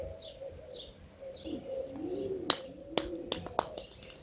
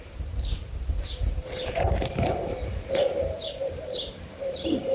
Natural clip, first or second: first